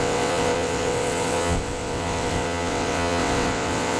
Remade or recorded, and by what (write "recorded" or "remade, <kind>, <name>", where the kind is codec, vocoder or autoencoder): remade, vocoder, WaveNeXt